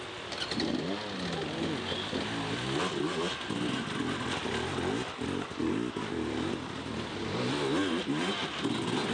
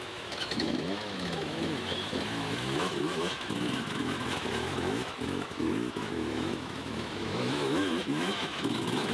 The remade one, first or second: second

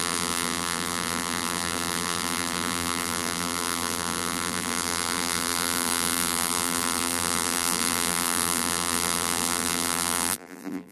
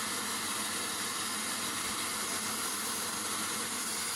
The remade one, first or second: first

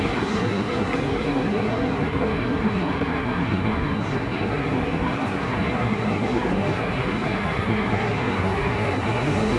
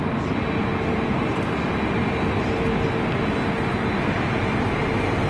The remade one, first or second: first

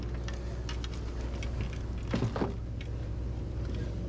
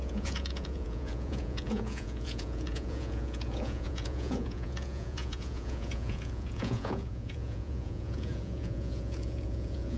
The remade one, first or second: second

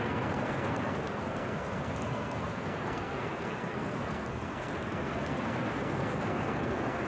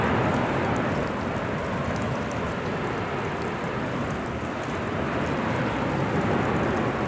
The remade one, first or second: first